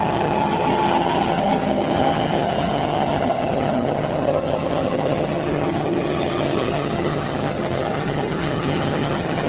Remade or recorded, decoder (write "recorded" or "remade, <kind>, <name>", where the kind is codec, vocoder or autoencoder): remade, vocoder, HiFi-GAN